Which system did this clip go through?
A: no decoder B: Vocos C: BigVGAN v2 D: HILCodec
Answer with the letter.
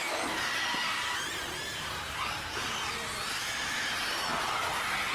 A